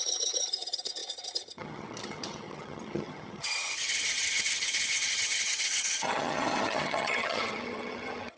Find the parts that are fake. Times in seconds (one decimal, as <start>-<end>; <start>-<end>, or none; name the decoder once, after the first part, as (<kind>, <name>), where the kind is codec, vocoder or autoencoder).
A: 0.0-8.4 (vocoder, HiFi-GAN)